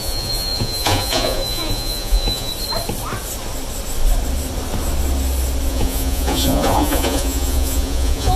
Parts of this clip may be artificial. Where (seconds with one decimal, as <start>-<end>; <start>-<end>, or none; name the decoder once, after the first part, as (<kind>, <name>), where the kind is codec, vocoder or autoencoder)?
0.0-2.5 (vocoder, Vocos); 5.7-8.4